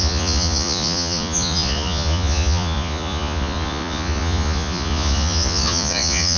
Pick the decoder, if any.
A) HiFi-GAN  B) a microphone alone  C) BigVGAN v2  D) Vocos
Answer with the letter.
D